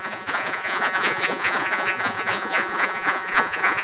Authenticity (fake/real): fake